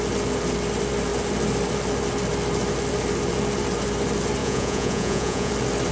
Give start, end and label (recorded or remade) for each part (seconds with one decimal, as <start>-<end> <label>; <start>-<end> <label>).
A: 0.0-4.4 recorded; 4.4-5.5 remade; 5.5-5.9 recorded